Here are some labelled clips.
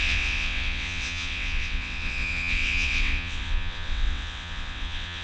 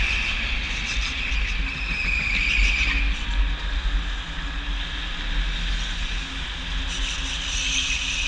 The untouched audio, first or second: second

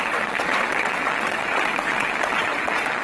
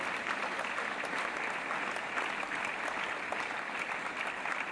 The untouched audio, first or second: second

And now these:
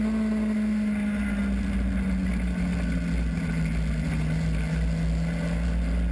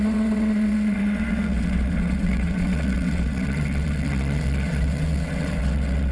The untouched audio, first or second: first